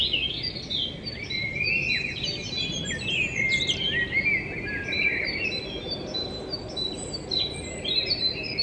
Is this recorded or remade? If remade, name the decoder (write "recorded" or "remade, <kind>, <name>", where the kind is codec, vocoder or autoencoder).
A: recorded